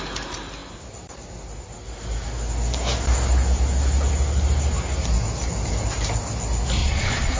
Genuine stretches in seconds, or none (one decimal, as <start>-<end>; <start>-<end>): 0.0-6.8